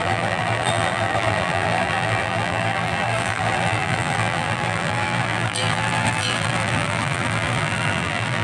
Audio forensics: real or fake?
fake